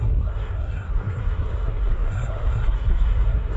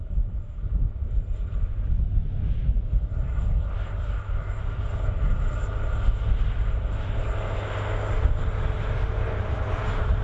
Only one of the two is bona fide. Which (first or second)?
second